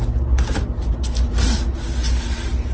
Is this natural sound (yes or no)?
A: yes